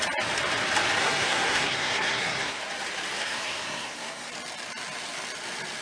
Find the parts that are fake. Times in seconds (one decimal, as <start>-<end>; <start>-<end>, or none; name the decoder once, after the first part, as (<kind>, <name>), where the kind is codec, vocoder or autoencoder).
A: 1.0-2.6 (codec, SNAC); 3.2-4.3